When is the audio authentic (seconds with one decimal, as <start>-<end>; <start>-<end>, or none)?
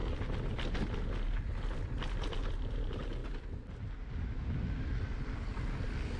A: 0.7-3.2; 4.1-6.2